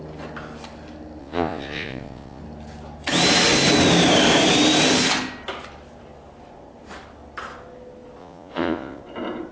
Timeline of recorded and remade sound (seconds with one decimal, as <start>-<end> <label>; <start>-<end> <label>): 0.0-1.2 recorded; 1.2-2.4 remade; 2.4-8.2 recorded; 8.2-9.0 remade; 9.0-9.5 recorded